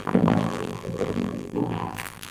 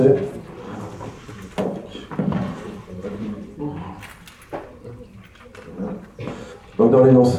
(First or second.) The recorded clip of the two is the second